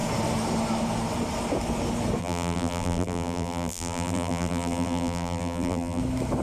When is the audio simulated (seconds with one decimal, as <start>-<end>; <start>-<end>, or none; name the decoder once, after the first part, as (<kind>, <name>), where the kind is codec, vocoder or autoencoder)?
2.2-6.0 (vocoder, BigVGAN v2)